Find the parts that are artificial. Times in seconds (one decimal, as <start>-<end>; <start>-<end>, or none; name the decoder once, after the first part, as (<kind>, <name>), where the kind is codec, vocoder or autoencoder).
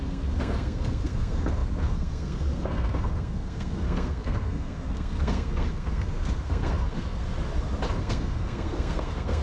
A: 0.0-7.3 (codec, SNAC); 8.0-9.4